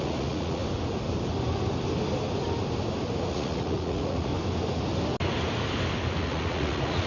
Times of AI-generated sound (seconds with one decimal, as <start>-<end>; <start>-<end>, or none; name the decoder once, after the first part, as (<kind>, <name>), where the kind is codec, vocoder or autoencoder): 0.0-0.6 (vocoder, Vocos); 3.3-4.3; 6.1-7.1